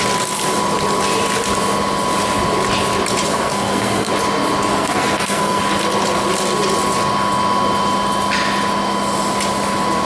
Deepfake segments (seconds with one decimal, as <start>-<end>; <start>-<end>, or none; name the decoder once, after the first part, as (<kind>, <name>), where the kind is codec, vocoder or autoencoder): 3.3-4.1 (codec, SNAC); 4.7-5.6